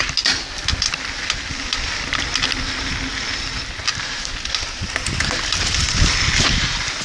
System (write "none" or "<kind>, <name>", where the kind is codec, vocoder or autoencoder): none